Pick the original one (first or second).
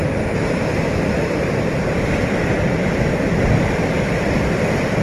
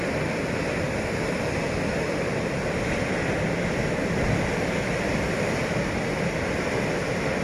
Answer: second